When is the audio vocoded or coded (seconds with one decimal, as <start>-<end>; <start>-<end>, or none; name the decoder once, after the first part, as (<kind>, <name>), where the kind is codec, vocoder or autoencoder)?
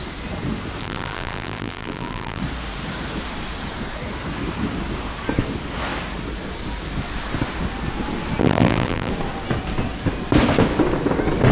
0.8-2.4 (vocoder, BigVGAN v2); 8.4-9.1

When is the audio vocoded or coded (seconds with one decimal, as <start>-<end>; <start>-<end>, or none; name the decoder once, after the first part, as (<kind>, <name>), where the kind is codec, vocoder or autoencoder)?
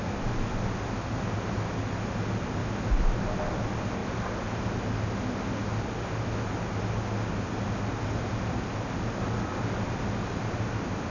none